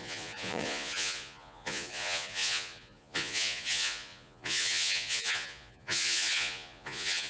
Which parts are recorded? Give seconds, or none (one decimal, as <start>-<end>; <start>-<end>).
none